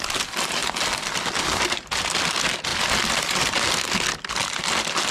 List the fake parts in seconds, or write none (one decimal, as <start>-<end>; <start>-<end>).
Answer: none